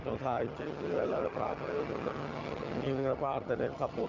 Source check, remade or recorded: remade